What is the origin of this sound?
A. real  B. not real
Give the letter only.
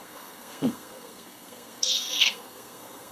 B